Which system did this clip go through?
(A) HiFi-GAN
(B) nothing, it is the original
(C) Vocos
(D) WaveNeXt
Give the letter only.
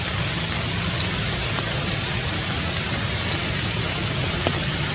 B